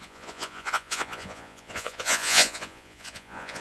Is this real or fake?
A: fake